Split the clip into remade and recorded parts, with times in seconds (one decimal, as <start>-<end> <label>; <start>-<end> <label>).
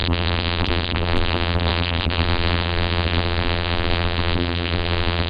0.0-5.3 remade